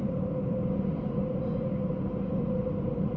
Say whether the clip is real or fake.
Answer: real